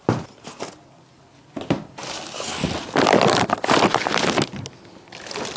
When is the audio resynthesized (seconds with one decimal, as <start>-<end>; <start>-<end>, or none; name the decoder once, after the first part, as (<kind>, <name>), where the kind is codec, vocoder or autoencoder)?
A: none